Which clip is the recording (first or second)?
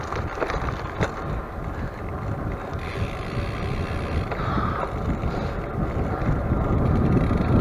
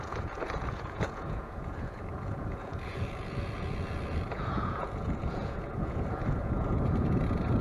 first